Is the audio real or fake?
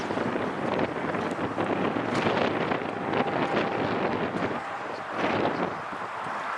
real